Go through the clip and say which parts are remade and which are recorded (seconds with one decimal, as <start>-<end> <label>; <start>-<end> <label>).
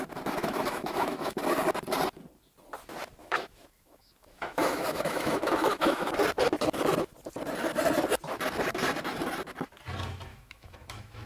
0.0-0.4 recorded; 0.4-1.4 remade; 1.4-3.2 recorded; 3.2-6.1 remade; 6.1-10.3 recorded; 10.3-11.3 remade